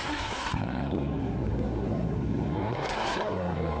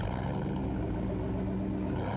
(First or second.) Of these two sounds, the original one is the second